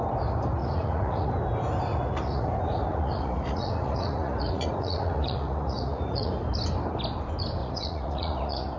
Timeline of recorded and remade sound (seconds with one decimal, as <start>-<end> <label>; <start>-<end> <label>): 0.0-0.6 recorded; 0.6-1.3 remade; 1.3-1.9 recorded; 1.9-2.5 remade; 2.5-2.9 recorded; 2.9-6.3 remade; 6.3-7.6 recorded; 7.6-8.8 remade